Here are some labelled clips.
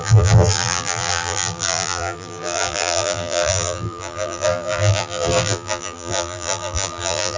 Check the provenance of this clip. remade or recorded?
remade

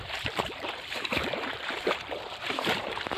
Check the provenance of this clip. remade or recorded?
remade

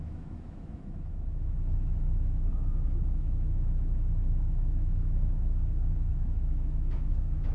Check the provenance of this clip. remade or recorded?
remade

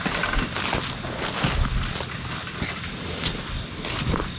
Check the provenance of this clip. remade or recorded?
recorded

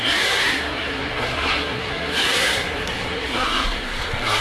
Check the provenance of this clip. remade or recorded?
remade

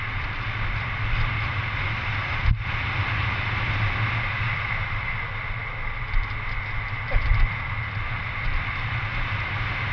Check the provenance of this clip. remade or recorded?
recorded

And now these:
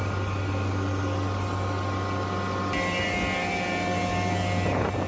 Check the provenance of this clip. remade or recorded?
recorded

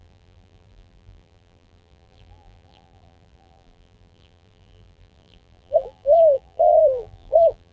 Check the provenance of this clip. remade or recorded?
remade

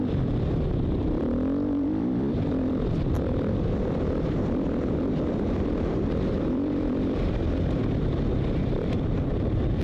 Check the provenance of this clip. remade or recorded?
remade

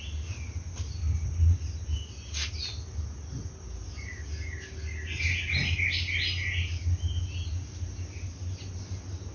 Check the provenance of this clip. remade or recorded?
recorded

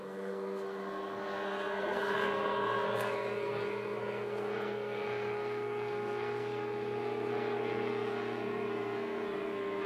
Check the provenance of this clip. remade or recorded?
remade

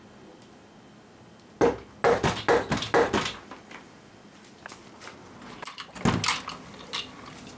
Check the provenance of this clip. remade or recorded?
recorded